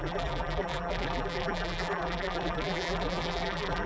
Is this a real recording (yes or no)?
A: no